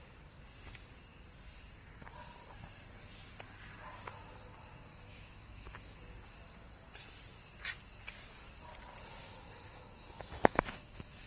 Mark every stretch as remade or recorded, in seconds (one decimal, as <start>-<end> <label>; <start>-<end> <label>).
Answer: 0.0-4.9 recorded; 4.9-6.0 remade; 6.0-9.2 recorded; 9.2-11.3 remade